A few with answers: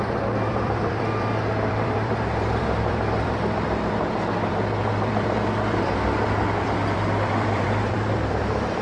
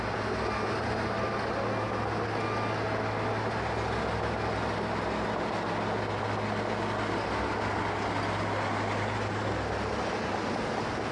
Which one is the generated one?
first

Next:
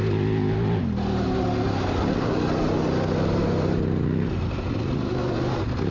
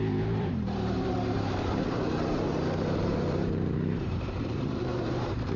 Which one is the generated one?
second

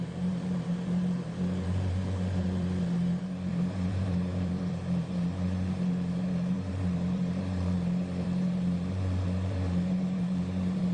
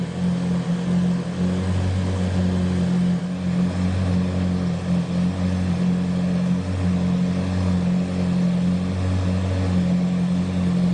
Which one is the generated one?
first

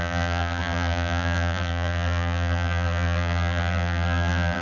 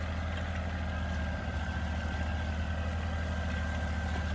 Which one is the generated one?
first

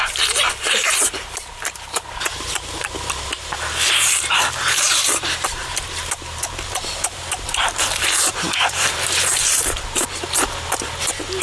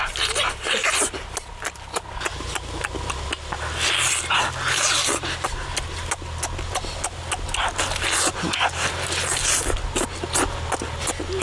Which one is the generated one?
first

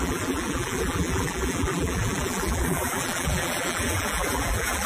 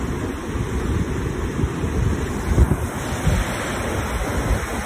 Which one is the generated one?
first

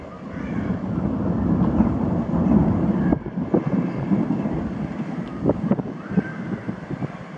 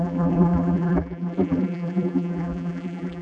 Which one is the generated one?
second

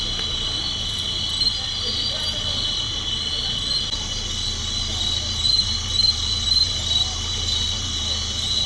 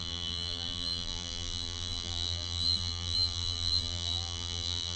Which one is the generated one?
second